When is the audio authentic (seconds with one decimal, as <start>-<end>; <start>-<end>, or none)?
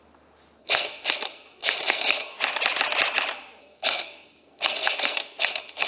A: 0.0-0.6; 2.4-3.6